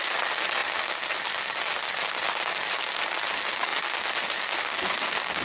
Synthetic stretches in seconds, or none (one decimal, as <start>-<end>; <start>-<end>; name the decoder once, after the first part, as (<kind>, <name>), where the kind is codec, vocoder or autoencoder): none